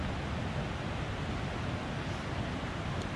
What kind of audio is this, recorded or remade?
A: recorded